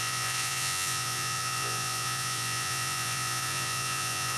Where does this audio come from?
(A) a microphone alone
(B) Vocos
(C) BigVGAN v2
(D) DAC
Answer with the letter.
B